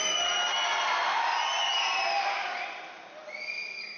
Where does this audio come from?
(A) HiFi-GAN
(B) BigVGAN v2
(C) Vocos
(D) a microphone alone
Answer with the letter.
D